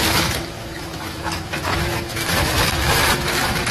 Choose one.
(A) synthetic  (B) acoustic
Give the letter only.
A